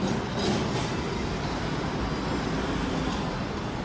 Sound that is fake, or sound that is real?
real